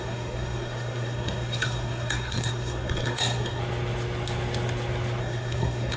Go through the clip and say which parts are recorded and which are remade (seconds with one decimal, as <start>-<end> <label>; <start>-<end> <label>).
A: 0.0-3.6 remade; 3.6-5.2 recorded; 5.2-6.0 remade